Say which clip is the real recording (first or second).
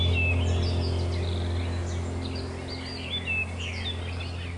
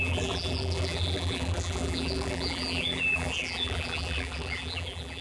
first